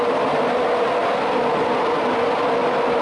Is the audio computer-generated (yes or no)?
no